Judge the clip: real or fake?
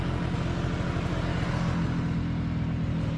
real